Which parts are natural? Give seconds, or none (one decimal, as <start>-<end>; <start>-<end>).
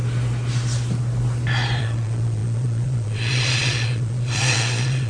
0.0-1.8